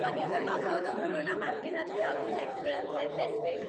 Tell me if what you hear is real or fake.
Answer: fake